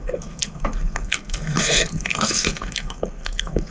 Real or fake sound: fake